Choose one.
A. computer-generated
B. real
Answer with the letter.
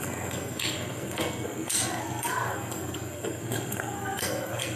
A